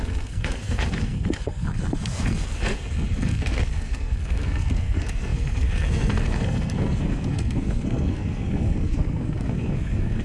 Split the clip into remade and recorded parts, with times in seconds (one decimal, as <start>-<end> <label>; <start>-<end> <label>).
0.0-10.2 remade